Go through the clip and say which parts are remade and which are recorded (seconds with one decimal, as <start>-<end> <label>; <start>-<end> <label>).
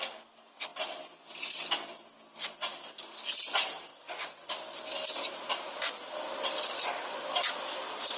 0.0-8.2 recorded